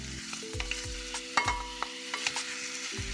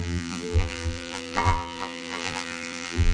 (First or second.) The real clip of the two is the first